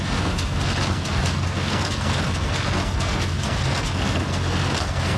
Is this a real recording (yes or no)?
no